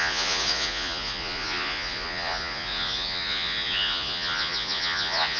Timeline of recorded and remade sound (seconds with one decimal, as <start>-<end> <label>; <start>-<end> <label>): 0.0-5.4 remade